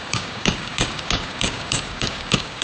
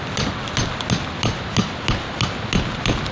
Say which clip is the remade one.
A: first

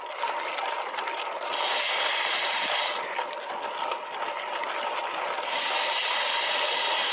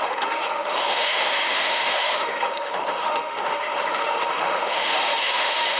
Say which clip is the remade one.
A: second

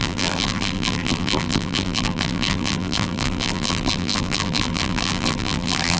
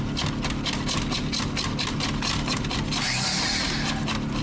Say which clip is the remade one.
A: first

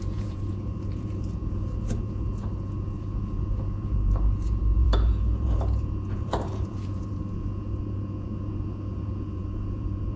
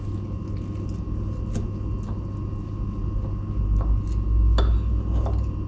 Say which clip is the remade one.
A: first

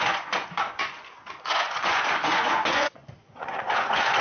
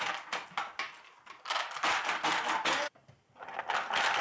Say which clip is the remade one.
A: first